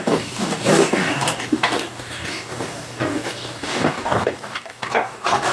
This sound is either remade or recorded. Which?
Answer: remade